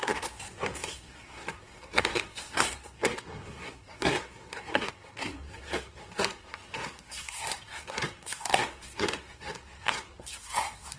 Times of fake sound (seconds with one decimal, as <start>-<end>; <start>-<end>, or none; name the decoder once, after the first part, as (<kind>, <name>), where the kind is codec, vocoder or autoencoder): 0.0-11.0 (codec, SNAC)